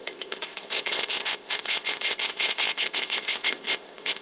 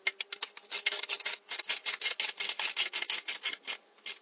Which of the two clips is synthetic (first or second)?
first